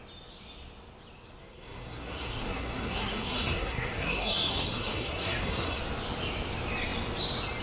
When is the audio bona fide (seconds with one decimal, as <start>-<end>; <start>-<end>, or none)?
0.0-1.4; 5.8-7.6